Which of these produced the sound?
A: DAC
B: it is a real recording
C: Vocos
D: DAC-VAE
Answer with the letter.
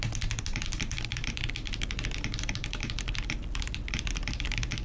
B